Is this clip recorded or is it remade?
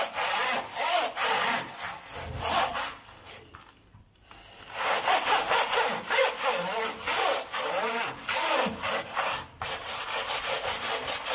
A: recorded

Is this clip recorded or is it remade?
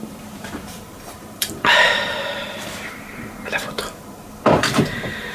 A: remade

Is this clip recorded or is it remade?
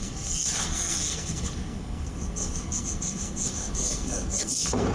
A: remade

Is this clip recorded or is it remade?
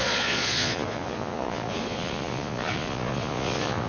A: remade